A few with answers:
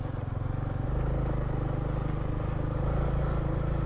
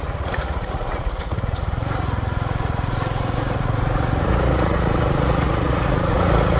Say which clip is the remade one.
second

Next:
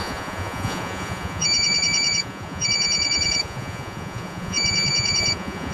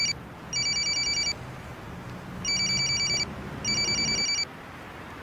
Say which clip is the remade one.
first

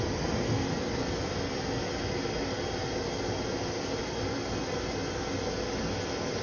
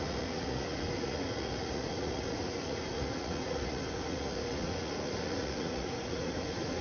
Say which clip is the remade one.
second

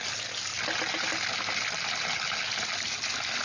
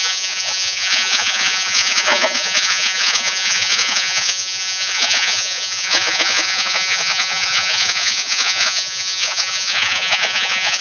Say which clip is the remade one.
second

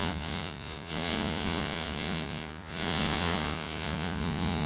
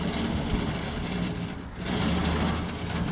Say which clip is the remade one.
first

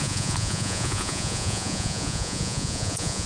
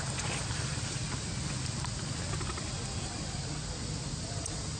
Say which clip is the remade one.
first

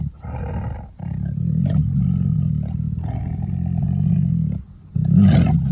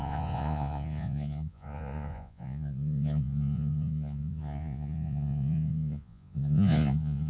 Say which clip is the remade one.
second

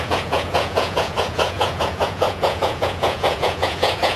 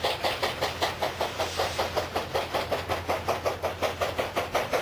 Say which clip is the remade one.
first